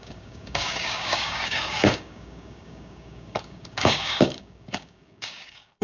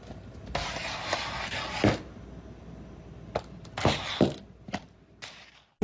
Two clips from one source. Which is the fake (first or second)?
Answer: first